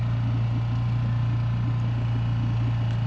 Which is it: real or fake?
real